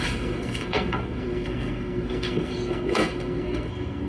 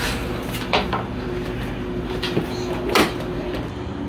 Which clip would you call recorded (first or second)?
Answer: second